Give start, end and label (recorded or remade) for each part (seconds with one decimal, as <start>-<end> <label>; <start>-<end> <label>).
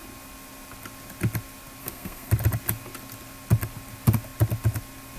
0.0-1.8 recorded; 1.8-2.3 remade; 2.3-5.2 recorded